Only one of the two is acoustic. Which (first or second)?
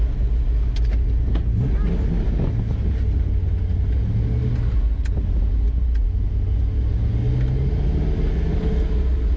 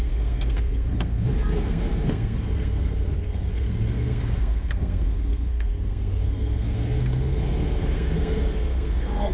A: first